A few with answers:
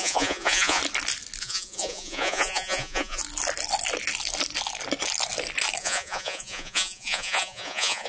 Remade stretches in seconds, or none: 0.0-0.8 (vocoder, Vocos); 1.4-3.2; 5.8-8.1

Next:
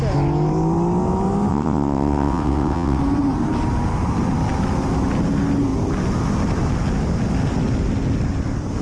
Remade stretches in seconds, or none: 1.5-3.0 (vocoder, WaveNeXt)

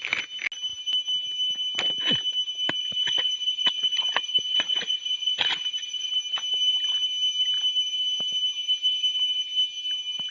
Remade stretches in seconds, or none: 2.8-6.1 (vocoder, Vocos)

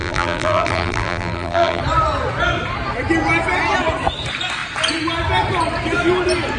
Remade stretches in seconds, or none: 0.0-1.8 (vocoder, BigVGAN v2)

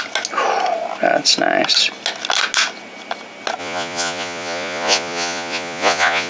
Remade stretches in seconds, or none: 3.6-6.3 (vocoder, Vocos)